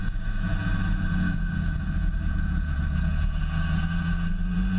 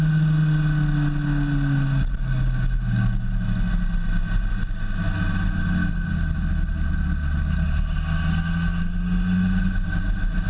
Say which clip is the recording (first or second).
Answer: second